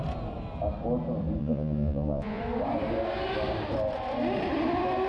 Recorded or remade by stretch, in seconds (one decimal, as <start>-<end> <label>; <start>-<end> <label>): 0.0-1.4 recorded; 1.4-2.4 remade; 2.4-5.1 recorded